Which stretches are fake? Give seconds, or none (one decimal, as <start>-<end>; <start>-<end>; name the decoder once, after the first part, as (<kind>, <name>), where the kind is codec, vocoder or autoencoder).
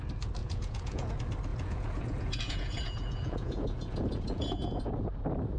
0.4-1.1 (vocoder, Vocos); 1.5-4.9